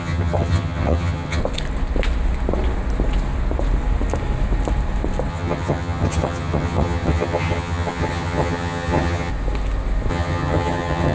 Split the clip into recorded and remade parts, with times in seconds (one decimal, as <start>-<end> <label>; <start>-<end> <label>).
0.0-1.4 remade; 1.4-5.3 recorded; 5.3-9.3 remade; 9.3-10.1 recorded; 10.1-11.1 remade